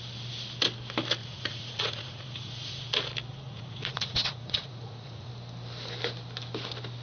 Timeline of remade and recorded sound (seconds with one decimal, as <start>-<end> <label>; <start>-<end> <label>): 0.0-1.2 recorded; 1.2-2.9 remade; 2.9-3.3 recorded; 3.3-5.3 remade; 5.3-7.0 recorded